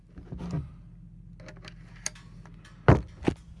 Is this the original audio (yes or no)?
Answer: yes